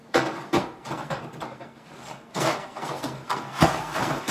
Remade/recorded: remade